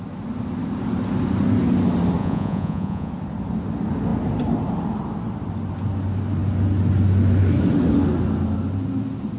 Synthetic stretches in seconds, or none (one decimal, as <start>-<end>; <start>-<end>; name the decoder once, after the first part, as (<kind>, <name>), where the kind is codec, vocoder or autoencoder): 2.2-3.1 (vocoder, Vocos)